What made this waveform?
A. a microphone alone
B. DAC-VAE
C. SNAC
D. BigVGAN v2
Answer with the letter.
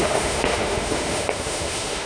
B